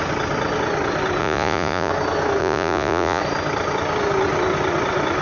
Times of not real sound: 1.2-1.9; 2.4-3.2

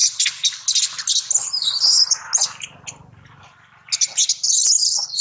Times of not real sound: none

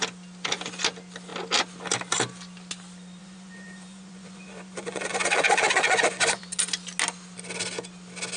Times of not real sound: 3.2-6.4

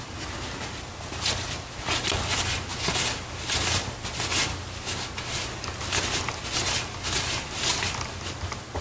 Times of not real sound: none

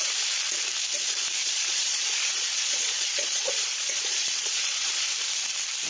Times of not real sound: 1.4-4.9

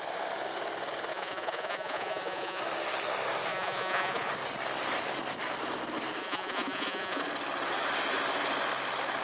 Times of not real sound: 1.1-2.6; 3.5-4.3; 6.2-7.2

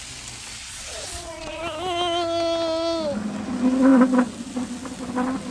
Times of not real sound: 0.6-1.6

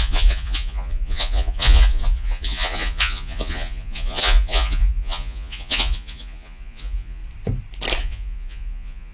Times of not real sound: 0.0-7.2; 8.0-9.1